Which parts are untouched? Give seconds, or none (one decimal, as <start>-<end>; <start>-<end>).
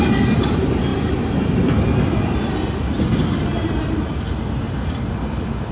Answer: 0.0-5.7